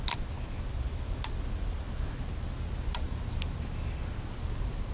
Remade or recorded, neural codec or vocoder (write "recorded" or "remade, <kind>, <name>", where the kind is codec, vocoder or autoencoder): recorded